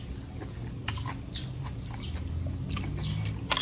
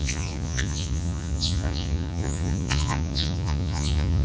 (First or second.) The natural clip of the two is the first